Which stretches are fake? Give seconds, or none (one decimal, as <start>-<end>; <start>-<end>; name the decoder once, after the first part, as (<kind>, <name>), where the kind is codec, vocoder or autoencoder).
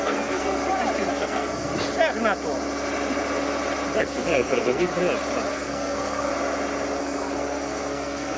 0.0-0.6 (codec, SNAC); 1.1-1.7; 4.0-4.9; 5.5-6.3; 7.0-8.4